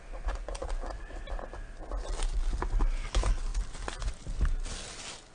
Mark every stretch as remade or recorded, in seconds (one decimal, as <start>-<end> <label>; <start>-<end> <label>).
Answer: 0.0-5.3 recorded